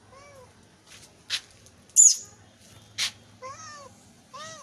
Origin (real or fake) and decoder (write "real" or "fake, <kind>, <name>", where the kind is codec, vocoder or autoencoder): real